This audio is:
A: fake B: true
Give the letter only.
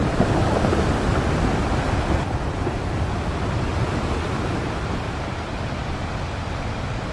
B